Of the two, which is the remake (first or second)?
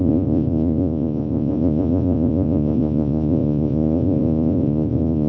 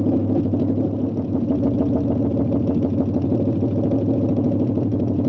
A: first